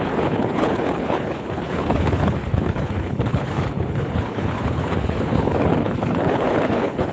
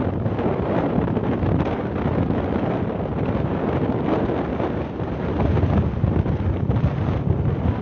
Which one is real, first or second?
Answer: second